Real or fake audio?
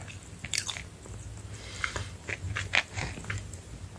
real